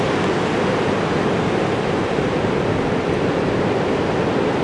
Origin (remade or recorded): recorded